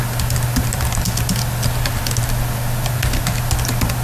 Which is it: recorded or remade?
recorded